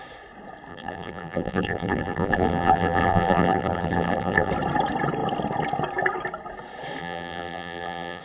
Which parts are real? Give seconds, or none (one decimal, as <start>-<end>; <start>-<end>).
0.0-0.7; 4.5-7.0